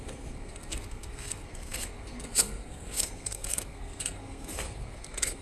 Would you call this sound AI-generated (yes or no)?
yes